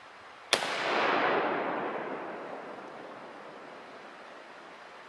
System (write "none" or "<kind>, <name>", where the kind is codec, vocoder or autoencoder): none